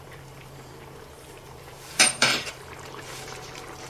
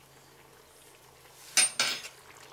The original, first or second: second